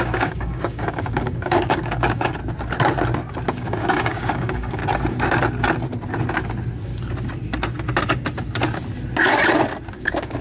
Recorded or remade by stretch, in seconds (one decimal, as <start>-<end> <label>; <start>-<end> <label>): 0.0-2.4 remade; 2.4-3.5 recorded; 3.5-4.8 remade; 4.8-9.9 recorded; 9.9-10.4 remade